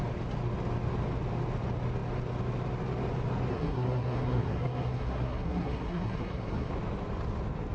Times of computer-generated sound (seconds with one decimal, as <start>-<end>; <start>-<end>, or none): 3.5-6.7